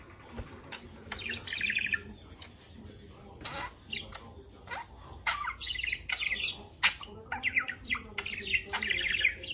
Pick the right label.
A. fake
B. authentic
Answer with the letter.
B